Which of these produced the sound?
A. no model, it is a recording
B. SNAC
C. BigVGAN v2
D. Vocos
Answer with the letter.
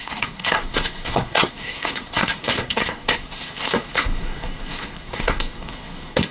B